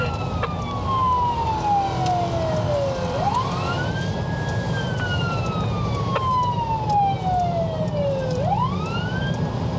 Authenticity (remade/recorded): recorded